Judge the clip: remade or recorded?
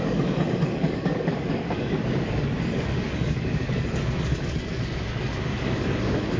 remade